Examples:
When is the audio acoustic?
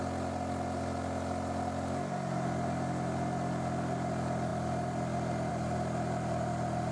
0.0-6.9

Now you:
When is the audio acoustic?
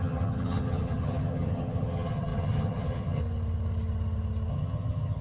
3.2-4.5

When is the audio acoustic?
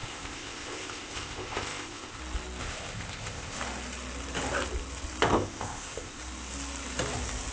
2.2-2.6; 3.6-5.3; 6.2-7.5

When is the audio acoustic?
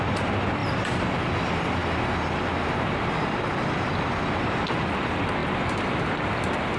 0.0-6.8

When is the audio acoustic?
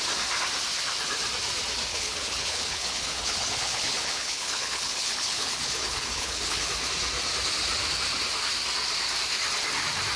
0.0-1.9; 6.7-10.2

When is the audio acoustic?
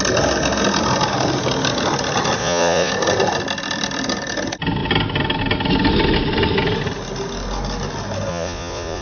0.0-2.4; 2.9-8.3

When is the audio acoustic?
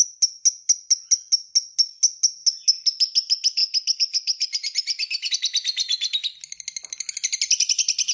0.0-8.1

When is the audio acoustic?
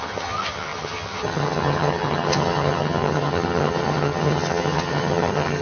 none